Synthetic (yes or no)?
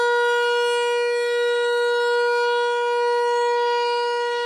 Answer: yes